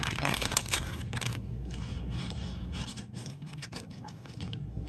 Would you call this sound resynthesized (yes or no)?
yes